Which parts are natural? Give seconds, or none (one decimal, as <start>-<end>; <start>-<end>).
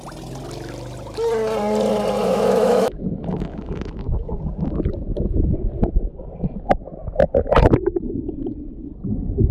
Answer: 0.0-2.2; 4.4-9.5